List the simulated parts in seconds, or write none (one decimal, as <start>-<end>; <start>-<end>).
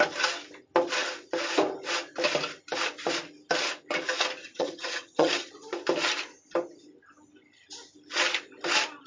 4.4-5.5